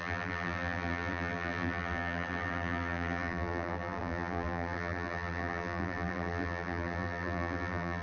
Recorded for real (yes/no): no